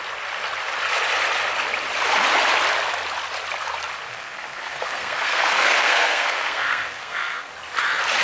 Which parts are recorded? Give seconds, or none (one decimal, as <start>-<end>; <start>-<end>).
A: 0.0-4.1; 7.5-8.2